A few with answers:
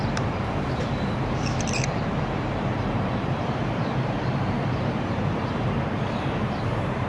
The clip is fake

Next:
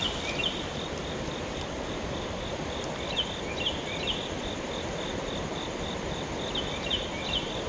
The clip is fake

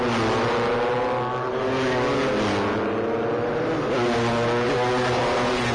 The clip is real